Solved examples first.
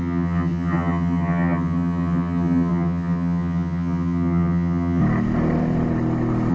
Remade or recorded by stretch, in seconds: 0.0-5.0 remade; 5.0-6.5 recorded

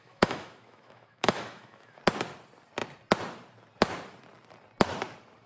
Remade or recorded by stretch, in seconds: 0.0-2.0 remade; 2.0-5.5 recorded

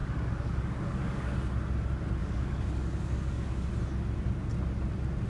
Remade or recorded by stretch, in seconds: 0.0-1.3 remade; 1.3-2.2 recorded; 2.2-3.7 remade; 3.7-5.3 recorded

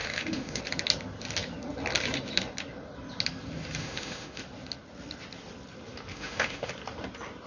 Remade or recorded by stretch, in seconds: 0.0-0.6 remade; 0.6-3.8 recorded; 3.8-4.4 remade; 4.4-6.1 recorded; 6.1-6.7 remade; 6.7-7.5 recorded

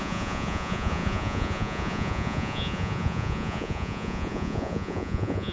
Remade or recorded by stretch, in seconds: 0.0-5.5 remade

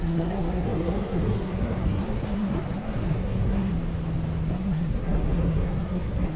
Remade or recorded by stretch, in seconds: 0.0-3.7 remade; 3.7-4.5 recorded; 4.5-6.4 remade

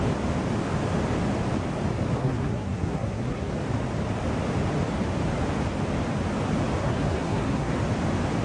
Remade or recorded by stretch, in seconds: 0.0-2.2 recorded; 2.2-3.5 remade; 3.5-6.8 recorded; 6.8-7.8 remade; 7.8-8.4 recorded

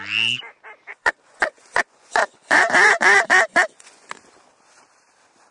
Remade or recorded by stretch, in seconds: 0.0-0.9 recorded; 0.9-4.1 remade; 4.1-5.5 recorded